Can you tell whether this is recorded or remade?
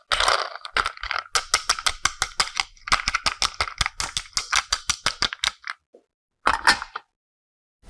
recorded